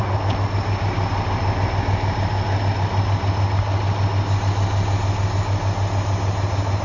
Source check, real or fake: real